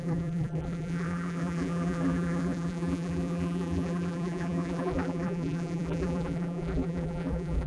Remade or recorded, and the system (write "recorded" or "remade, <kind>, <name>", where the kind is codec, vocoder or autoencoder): remade, vocoder, BigVGAN v2